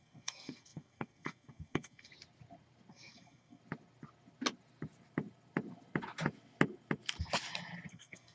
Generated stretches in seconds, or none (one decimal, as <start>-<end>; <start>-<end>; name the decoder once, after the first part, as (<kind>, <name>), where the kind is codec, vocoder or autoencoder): 0.0-2.1 (codec, SNAC); 2.9-3.6; 7.9-8.3